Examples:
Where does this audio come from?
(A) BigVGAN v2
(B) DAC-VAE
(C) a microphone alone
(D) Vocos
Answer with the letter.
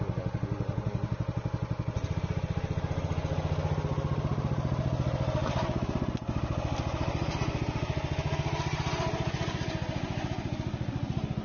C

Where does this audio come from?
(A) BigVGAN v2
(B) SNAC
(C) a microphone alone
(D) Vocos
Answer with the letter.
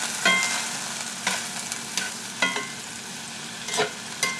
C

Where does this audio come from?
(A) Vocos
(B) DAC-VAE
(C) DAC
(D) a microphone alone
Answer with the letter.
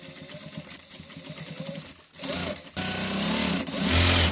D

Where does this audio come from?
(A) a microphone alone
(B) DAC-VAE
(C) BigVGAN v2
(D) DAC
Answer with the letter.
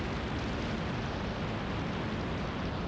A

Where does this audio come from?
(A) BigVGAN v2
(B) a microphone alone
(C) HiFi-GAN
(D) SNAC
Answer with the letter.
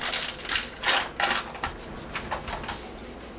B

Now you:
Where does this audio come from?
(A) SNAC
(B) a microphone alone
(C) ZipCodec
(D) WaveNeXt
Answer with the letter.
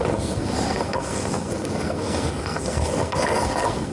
A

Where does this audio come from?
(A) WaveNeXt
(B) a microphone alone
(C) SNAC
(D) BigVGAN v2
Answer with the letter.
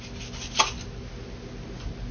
B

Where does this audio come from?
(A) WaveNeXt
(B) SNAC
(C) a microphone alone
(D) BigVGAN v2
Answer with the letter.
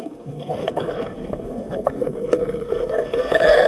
B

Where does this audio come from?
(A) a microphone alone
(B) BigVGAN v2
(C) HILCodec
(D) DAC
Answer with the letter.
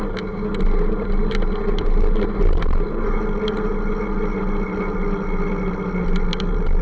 A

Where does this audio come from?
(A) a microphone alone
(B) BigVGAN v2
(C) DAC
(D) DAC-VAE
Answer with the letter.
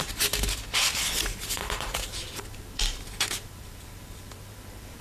B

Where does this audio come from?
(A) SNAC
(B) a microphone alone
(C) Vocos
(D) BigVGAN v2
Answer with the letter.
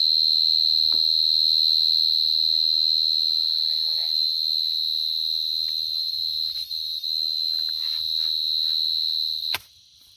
B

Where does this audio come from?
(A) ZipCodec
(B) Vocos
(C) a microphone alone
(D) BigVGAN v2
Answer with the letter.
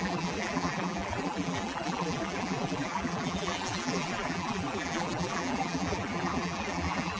D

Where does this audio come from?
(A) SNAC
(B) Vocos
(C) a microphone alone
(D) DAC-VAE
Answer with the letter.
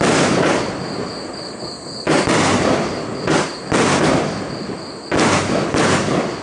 C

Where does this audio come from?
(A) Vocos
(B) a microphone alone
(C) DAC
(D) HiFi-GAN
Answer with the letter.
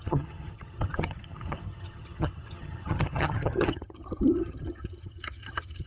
D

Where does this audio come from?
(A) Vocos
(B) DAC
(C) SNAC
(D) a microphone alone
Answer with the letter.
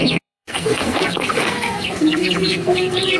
C